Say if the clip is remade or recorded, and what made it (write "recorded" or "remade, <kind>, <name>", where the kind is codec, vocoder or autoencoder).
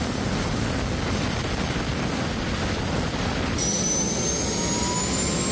recorded